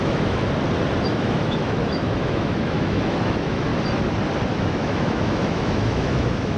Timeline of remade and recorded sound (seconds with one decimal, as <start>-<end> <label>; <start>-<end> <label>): 0.0-0.4 remade; 0.4-1.1 recorded; 1.1-3.7 remade; 3.7-4.5 recorded; 4.5-6.6 remade